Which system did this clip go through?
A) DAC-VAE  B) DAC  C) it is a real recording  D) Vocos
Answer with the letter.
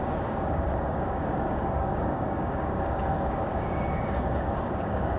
B